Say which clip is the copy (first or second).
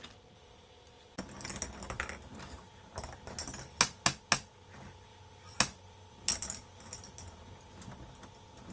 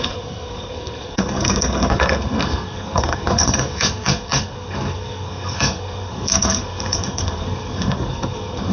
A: second